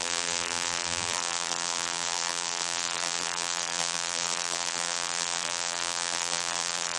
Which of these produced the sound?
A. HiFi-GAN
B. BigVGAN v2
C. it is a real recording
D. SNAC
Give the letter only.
B